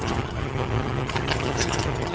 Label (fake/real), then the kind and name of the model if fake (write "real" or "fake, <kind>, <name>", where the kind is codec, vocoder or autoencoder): fake, vocoder, HiFi-GAN